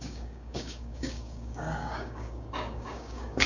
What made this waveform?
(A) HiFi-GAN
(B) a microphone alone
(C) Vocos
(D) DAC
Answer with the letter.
D